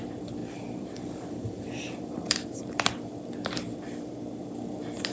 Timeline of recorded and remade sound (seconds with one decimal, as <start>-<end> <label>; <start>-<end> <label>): 0.0-0.4 recorded; 0.4-2.6 remade; 2.6-5.1 recorded